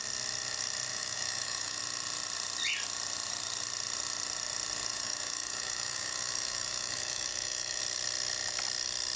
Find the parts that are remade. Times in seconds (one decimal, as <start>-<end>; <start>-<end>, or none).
0.9-1.8; 4.9-7.8